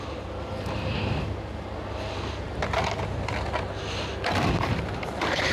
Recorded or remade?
recorded